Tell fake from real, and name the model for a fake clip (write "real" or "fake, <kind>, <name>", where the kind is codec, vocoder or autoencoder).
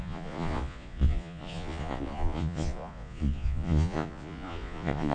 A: fake, vocoder, Vocos